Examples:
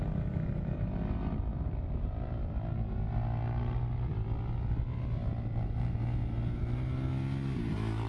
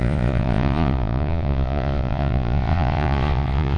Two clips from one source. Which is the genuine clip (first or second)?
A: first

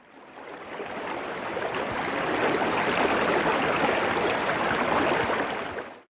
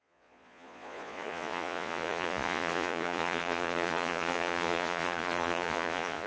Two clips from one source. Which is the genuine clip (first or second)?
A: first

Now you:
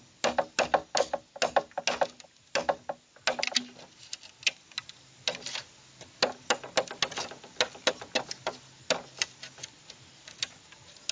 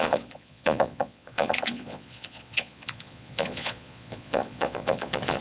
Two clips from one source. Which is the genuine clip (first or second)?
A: first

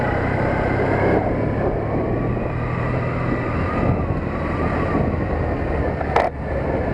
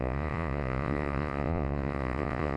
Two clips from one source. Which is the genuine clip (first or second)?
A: first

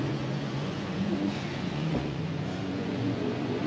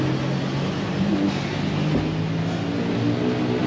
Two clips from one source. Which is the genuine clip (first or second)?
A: second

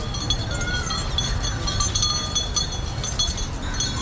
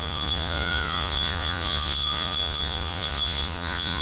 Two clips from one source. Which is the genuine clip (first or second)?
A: first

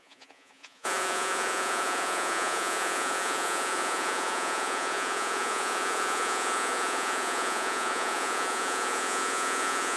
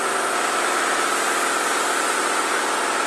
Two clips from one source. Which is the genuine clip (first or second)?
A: second